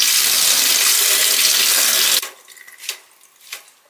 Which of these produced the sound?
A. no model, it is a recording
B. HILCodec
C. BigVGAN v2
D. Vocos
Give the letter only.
A